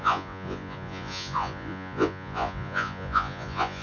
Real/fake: fake